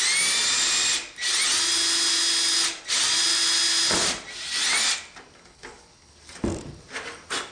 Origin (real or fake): real